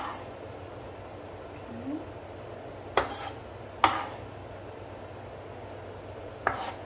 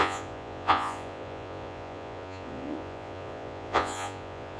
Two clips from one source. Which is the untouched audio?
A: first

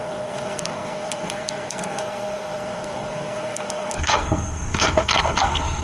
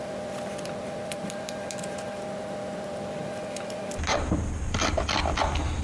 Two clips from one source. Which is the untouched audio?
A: second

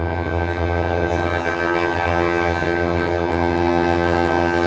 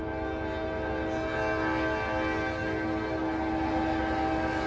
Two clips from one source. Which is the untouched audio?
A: second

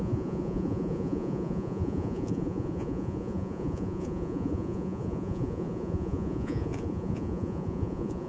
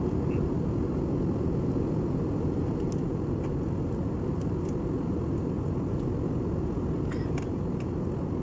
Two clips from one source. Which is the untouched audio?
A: second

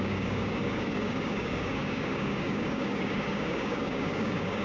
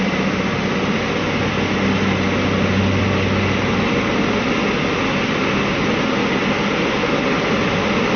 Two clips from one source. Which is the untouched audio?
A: second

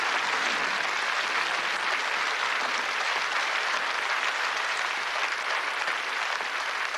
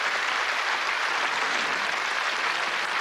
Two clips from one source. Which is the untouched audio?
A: first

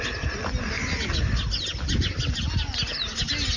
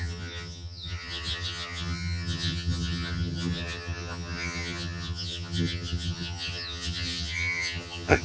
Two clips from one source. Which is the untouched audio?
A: first